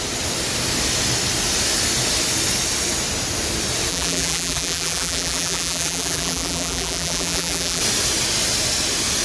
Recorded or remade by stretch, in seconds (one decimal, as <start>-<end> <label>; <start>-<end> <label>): 0.0-3.9 recorded; 3.9-7.8 remade; 7.8-9.2 recorded